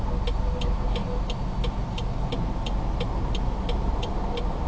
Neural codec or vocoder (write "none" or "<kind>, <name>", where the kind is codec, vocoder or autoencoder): none